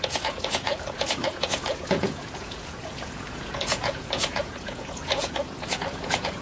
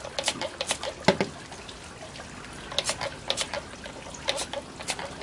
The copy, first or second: first